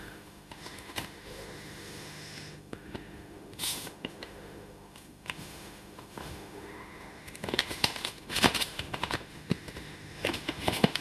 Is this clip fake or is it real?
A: fake